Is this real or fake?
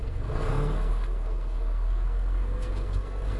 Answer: fake